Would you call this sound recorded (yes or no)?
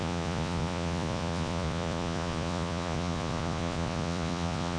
no